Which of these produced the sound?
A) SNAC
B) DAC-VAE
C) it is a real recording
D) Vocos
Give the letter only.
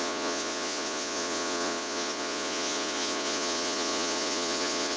D